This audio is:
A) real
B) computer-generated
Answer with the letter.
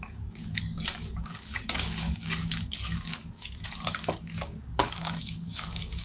B